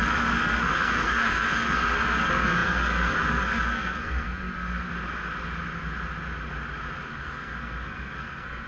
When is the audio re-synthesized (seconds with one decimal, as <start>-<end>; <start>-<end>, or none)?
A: 0.0-4.9; 7.1-8.7